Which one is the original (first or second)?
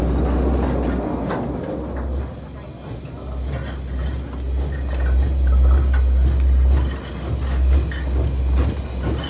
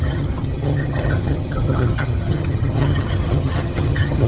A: first